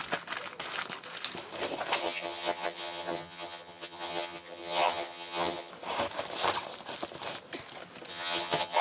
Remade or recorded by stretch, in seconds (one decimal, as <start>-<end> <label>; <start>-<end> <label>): 0.0-2.0 recorded; 2.0-5.7 remade; 5.7-8.1 recorded; 8.1-8.8 remade